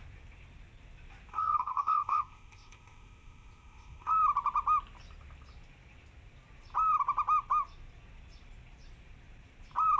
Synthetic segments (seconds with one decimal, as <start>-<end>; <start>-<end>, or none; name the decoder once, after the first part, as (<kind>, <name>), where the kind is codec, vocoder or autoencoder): 1.3-4.1 (codec, ZipCodec)